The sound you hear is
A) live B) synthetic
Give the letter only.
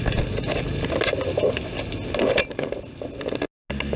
A